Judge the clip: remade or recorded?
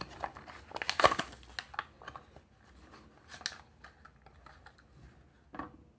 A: recorded